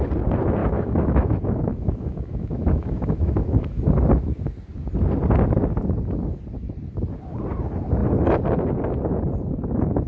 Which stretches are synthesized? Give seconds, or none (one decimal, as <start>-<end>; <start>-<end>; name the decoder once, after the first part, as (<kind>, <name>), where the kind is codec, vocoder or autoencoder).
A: 0.6-3.8 (autoencoder, DAC-VAE)